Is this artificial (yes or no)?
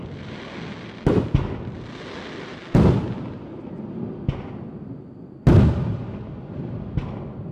no